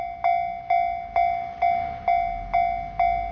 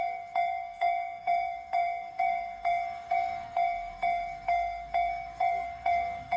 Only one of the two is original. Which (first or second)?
first